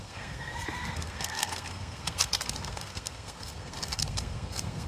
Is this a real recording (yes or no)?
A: no